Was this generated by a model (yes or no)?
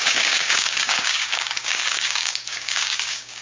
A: yes